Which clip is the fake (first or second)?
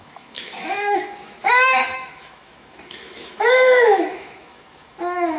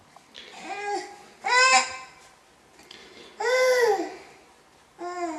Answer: first